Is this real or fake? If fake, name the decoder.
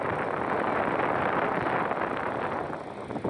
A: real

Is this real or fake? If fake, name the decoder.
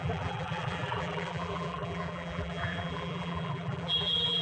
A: fake, vocoder, BigVGAN v2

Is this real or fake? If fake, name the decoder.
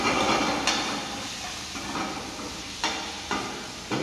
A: real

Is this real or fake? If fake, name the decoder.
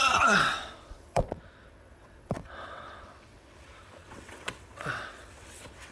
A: fake, vocoder, WaveNeXt